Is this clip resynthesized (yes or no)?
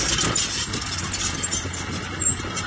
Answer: no